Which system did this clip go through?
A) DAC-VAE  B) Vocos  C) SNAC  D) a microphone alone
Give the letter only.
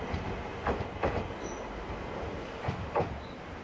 D